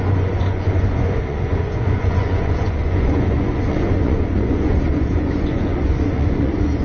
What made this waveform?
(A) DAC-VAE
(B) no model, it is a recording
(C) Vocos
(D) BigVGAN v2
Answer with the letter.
C